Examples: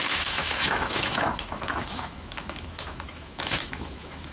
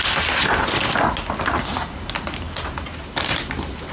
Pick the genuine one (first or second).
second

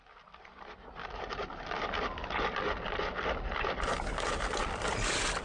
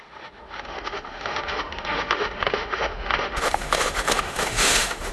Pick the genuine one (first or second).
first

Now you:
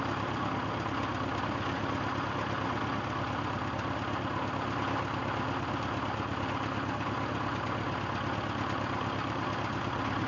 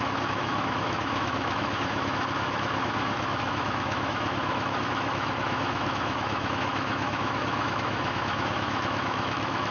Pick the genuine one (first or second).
first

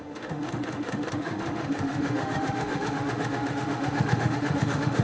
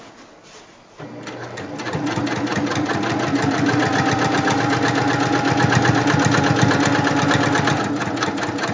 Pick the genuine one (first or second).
second